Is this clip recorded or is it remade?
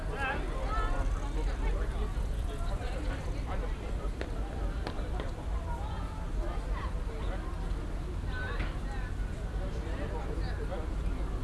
recorded